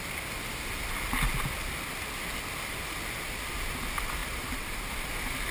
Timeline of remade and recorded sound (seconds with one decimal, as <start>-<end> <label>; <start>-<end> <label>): 0.0-4.2 recorded; 4.2-4.9 remade; 4.9-5.5 recorded